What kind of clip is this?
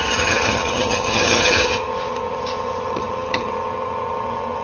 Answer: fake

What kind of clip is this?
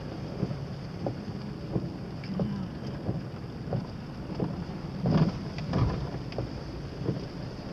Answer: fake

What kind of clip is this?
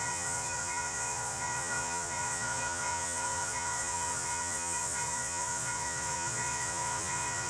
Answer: fake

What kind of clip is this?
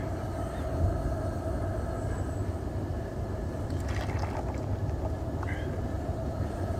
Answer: real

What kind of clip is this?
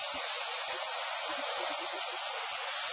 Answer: real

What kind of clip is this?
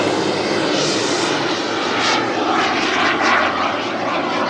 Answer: real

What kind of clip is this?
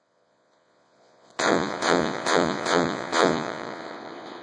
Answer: fake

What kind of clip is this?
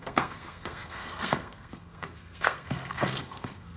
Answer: fake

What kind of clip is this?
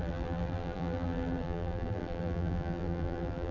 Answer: fake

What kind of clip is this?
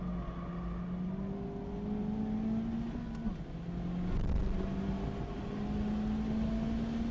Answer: real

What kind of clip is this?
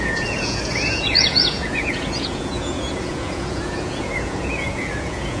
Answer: fake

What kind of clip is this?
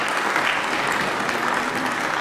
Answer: real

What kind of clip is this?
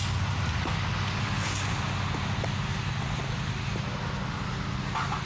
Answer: real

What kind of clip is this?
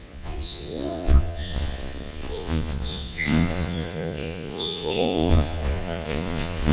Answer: fake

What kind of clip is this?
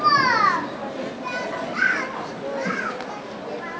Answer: real